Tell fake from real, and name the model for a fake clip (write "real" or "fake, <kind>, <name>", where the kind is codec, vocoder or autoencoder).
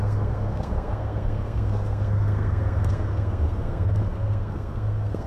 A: fake, codec, SNAC